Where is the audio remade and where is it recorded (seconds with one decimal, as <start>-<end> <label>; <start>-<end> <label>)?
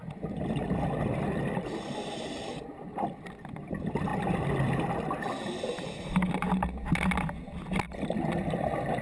0.0-9.0 recorded